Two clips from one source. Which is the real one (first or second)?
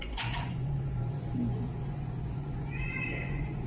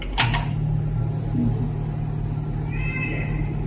second